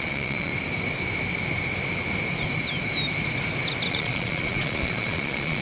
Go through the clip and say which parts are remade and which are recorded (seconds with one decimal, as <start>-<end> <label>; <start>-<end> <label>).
0.0-0.5 remade; 0.5-3.9 recorded; 3.9-5.6 remade